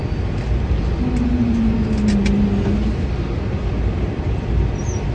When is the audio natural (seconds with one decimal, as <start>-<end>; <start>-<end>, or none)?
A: 0.0-5.1